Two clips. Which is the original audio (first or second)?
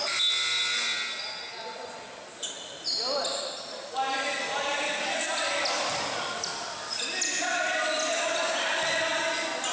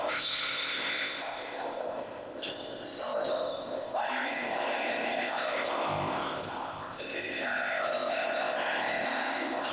first